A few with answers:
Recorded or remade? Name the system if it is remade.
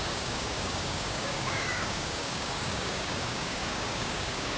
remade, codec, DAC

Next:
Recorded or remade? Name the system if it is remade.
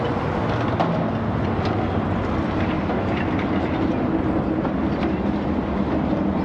recorded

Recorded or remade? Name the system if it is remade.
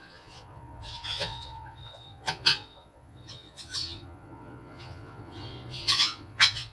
remade, vocoder, Vocos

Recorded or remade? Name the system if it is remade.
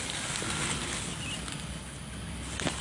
recorded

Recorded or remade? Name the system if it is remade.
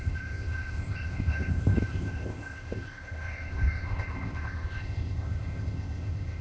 remade, codec, ZipCodec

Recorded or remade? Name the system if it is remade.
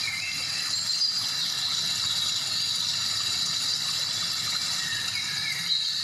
recorded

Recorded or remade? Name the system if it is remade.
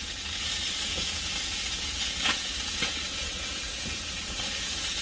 remade, vocoder, Vocos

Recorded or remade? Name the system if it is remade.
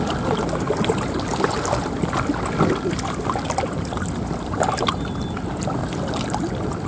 recorded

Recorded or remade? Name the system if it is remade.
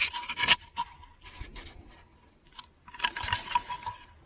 recorded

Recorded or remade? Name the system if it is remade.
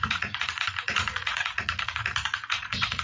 remade, vocoder, Vocos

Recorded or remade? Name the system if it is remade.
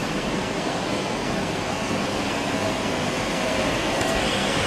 remade, codec, SNAC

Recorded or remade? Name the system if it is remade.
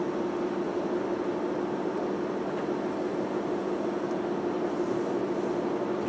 recorded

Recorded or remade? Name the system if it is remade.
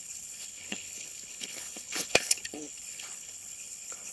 remade, codec, HILCodec